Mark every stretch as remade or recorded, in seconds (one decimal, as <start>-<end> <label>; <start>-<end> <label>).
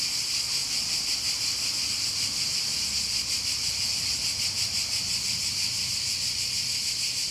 0.0-7.3 recorded